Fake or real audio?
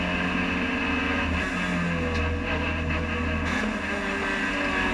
real